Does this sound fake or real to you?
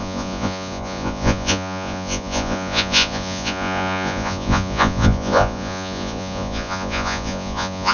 fake